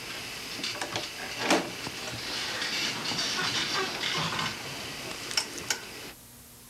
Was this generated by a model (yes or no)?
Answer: no